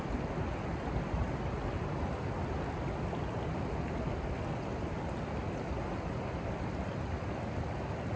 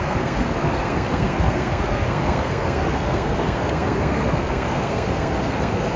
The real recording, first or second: first